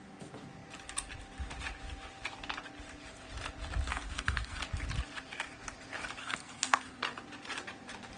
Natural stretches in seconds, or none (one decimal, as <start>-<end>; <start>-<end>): 0.0-3.9; 4.6-6.2; 7.0-8.2